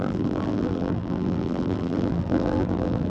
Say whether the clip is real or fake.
fake